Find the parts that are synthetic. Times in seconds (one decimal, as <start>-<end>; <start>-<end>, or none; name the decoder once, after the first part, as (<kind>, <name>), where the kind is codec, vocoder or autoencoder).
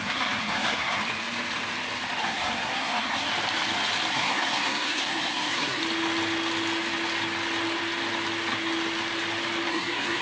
0.0-1.0 (codec, SNAC); 2.2-3.3; 4.1-5.8; 9.7-10.2